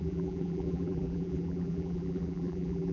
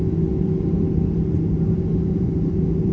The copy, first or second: first